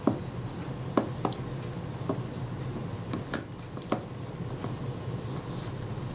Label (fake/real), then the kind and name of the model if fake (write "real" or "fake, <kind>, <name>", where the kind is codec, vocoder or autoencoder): real